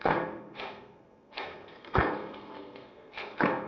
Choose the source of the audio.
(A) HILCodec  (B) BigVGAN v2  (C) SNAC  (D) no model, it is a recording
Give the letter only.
C